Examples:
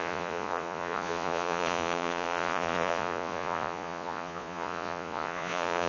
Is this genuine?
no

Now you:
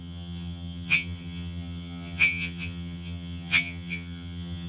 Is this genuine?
no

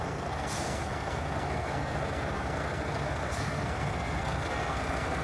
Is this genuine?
no